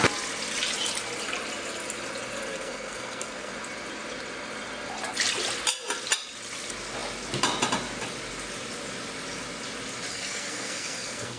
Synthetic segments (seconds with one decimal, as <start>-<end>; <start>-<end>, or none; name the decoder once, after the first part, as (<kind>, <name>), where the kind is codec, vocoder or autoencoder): 2.5-3.5 (codec, SNAC); 10.1-11.4